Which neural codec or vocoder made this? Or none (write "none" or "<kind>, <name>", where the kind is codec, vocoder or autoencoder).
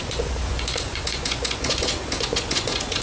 vocoder, Vocos